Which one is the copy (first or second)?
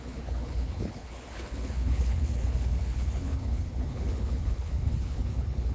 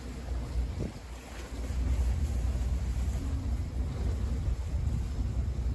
first